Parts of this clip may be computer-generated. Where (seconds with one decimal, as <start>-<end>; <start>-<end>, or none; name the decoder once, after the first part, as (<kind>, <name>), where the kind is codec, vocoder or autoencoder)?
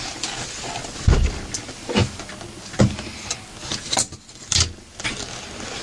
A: none